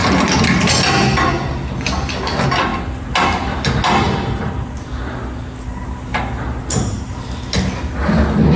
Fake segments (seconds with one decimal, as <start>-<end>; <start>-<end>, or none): none